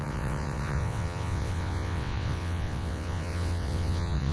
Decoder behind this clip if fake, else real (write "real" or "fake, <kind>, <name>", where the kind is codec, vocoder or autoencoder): fake, vocoder, WaveNeXt